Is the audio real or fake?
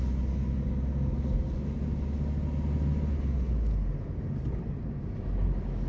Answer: real